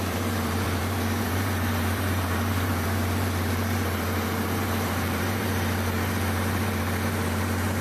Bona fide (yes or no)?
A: no